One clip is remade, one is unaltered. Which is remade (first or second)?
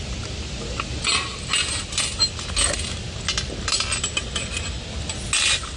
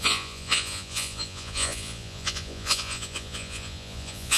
second